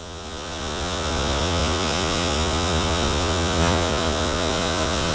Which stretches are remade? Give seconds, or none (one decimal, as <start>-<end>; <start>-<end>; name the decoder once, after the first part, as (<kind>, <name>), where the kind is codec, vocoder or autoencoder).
0.0-5.1 (vocoder, Vocos)